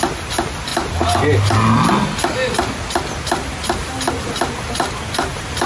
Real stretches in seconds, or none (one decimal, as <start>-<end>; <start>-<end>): 0.0-5.7